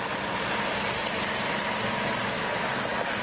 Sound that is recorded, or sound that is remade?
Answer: recorded